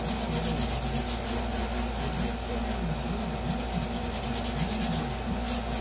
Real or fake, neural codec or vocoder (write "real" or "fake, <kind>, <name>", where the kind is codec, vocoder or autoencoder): real